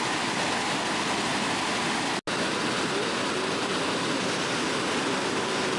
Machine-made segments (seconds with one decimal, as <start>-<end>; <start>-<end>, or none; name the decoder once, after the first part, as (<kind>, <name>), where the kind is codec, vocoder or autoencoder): none